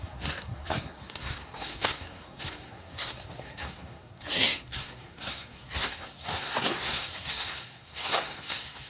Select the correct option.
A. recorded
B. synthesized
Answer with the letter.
B